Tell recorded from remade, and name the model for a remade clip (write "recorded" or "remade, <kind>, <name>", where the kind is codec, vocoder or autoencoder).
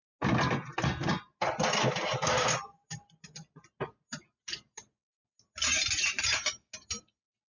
recorded